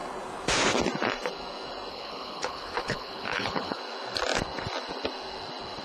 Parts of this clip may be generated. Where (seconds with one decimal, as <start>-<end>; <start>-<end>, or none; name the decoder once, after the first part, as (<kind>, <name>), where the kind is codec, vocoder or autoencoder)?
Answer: 1.9-3.8 (codec, HILCodec)